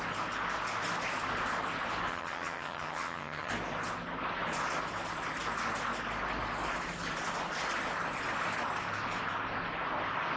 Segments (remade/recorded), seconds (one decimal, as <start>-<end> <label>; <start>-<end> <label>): 0.0-2.1 recorded; 2.1-3.5 remade; 3.5-10.4 recorded